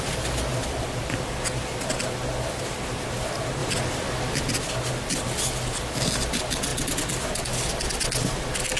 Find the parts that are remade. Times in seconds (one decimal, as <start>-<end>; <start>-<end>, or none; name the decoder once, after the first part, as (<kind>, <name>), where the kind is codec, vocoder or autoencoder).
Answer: 0.5-1.2 (vocoder, BigVGAN v2)